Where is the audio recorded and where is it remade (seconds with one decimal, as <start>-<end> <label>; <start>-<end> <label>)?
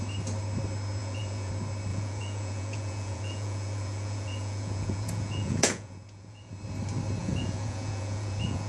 0.0-1.0 recorded; 1.0-1.5 remade; 1.5-1.9 recorded; 1.9-6.5 remade; 6.5-7.2 recorded; 7.2-8.7 remade